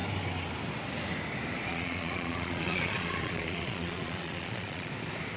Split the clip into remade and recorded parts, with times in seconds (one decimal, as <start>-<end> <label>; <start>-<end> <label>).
0.0-1.7 recorded; 1.7-4.9 remade; 4.9-5.4 recorded